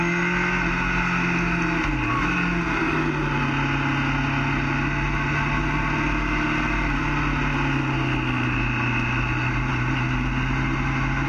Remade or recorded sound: recorded